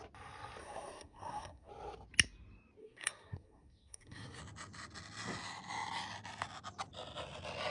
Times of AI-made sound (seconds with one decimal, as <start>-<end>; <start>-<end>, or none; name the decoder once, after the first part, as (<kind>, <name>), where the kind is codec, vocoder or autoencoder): 0.6-1.7 (codec, SNAC); 2.8-4.4